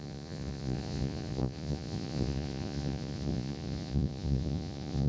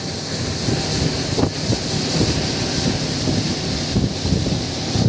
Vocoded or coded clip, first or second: first